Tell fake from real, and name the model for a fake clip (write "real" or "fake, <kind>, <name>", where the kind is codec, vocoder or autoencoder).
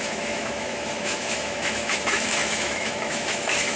fake, autoencoder, DAC-VAE